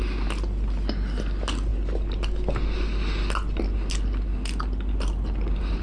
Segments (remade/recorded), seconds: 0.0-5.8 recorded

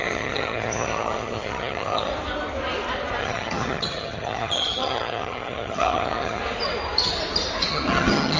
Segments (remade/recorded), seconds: 0.0-2.1 remade; 2.1-3.2 recorded; 3.2-6.4 remade; 6.4-7.7 recorded; 7.7-8.4 remade

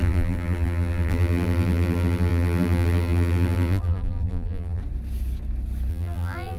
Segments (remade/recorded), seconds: 0.0-4.8 remade; 4.8-5.9 recorded; 5.9-6.6 remade

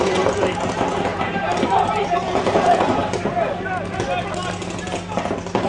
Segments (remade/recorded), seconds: 0.0-3.0 remade; 3.0-5.7 recorded

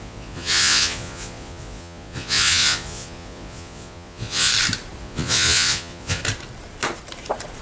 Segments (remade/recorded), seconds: 0.0-4.5 remade; 4.5-5.0 recorded; 5.0-6.2 remade; 6.2-7.6 recorded

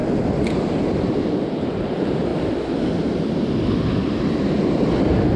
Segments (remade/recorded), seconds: 0.0-1.5 recorded; 1.5-2.3 remade; 2.3-3.7 recorded; 3.7-5.4 remade

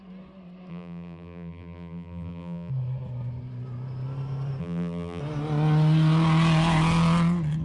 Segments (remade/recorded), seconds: 0.0-0.7 recorded; 0.7-2.7 remade; 2.7-4.6 recorded; 4.6-5.2 remade; 5.2-7.6 recorded